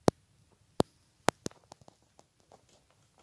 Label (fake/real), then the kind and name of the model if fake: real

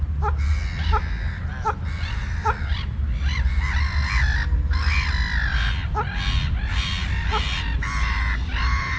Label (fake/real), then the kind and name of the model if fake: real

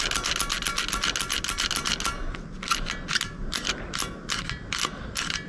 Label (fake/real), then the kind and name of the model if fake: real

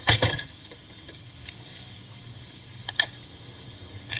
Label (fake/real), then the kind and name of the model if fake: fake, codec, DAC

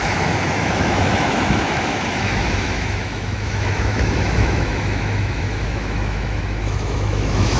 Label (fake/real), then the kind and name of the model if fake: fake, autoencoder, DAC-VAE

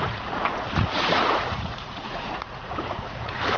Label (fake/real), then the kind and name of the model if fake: fake, vocoder, Vocos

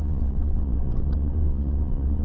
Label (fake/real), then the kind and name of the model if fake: fake, vocoder, WaveNeXt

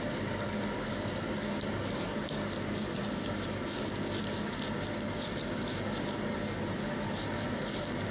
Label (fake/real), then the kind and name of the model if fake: real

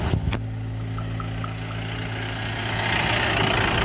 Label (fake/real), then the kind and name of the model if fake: real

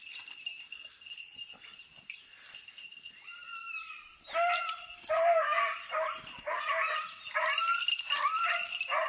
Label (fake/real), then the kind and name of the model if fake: real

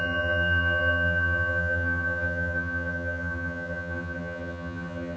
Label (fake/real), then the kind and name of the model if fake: fake, vocoder, HiFi-GAN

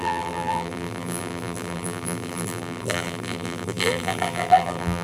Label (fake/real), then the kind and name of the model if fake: fake, vocoder, BigVGAN v2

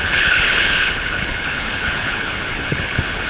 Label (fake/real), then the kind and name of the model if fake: fake, codec, HILCodec